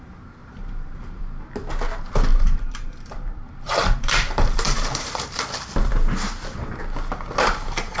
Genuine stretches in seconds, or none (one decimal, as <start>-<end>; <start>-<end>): 0.0-0.4; 1.2-2.3; 5.4-8.0